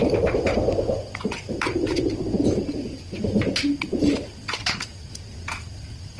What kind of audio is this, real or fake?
real